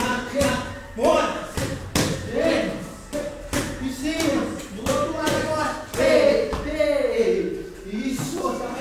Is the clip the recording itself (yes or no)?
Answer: yes